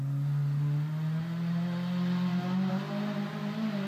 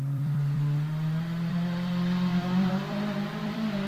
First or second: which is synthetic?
second